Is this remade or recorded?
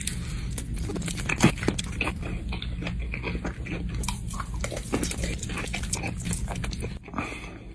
recorded